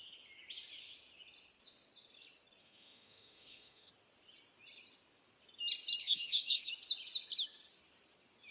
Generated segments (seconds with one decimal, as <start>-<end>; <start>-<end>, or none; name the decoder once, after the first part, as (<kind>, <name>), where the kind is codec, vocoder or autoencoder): 2.6-3.9 (autoencoder, DAC-VAE); 6.0-6.7